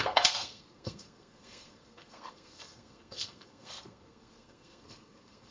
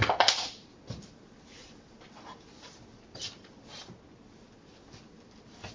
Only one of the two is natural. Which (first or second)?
second